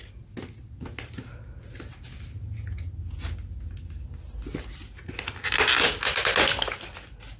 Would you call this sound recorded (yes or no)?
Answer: yes